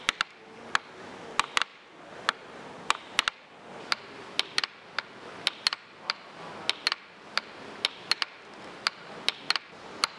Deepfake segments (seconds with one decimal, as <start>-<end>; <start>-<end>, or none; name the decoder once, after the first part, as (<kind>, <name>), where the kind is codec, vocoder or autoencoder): none